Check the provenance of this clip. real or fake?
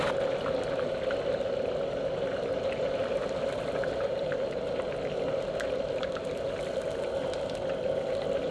real